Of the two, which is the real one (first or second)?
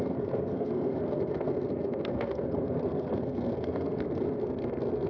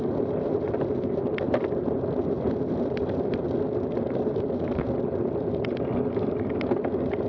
second